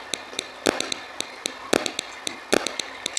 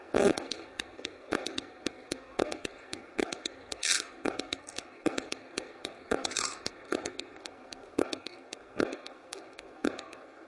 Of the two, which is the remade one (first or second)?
second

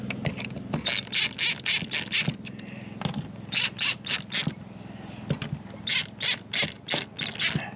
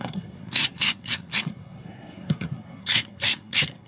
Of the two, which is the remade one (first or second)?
second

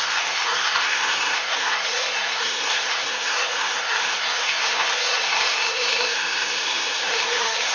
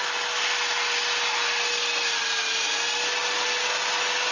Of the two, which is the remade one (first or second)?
first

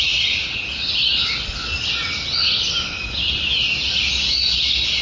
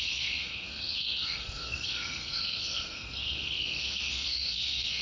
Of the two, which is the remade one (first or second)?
second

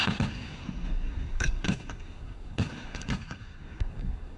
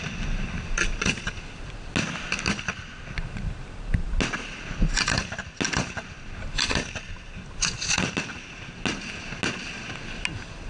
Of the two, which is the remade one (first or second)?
first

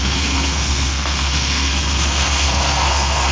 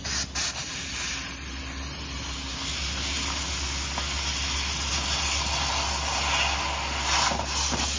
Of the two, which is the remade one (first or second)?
first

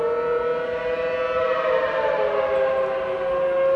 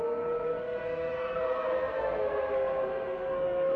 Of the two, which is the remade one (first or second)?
second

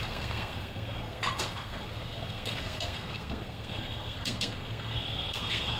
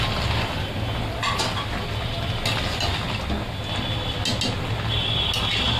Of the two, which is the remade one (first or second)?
first